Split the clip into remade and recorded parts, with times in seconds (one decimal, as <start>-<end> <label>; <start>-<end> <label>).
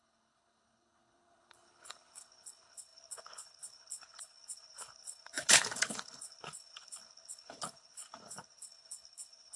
0.0-9.6 remade